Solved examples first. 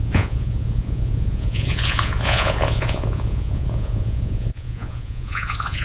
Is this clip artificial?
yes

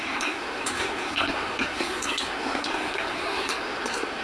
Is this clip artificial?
yes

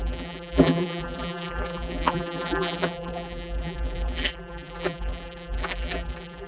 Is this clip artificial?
yes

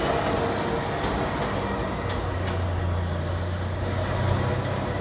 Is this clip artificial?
no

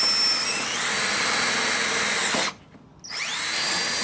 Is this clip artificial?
no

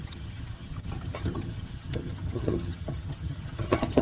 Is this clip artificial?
yes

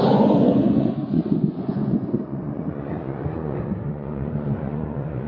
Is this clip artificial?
yes